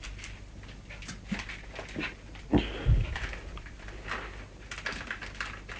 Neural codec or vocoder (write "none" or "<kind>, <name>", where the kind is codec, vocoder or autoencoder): none